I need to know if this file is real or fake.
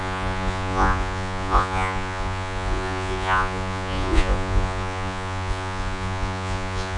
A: fake